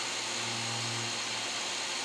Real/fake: real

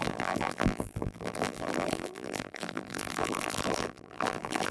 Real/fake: fake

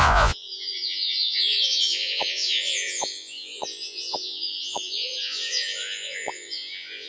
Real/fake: fake